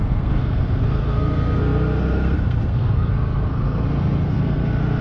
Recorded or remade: remade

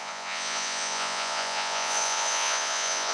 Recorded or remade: remade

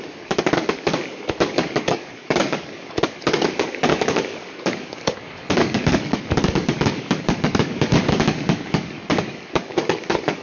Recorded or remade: remade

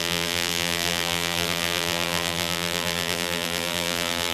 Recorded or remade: remade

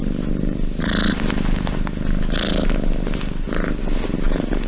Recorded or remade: recorded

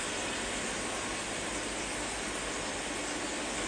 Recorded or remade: recorded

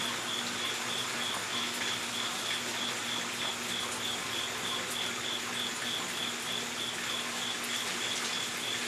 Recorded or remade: recorded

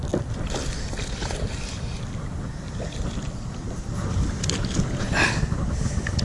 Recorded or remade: recorded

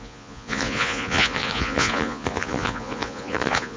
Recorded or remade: remade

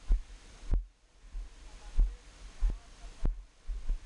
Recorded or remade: recorded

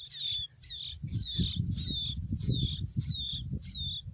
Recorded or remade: recorded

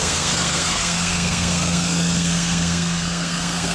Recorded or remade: remade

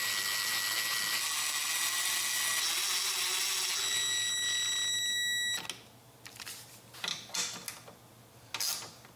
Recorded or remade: recorded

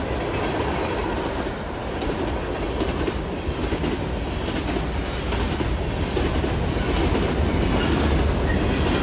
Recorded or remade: recorded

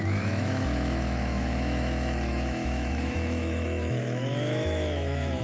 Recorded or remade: remade